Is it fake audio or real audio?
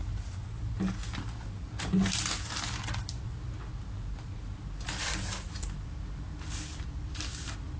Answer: real